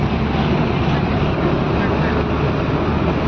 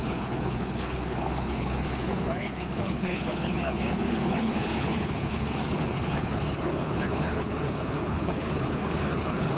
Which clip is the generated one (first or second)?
second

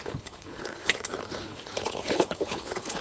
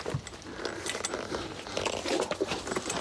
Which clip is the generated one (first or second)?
first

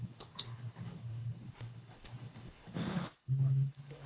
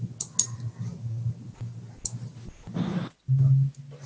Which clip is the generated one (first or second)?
first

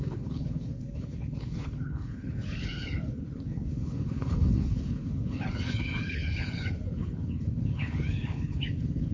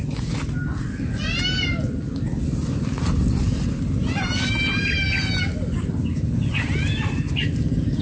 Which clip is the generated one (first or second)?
first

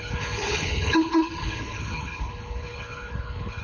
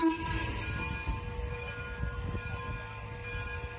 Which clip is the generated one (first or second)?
first